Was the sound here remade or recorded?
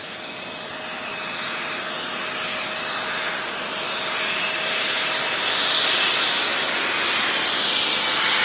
recorded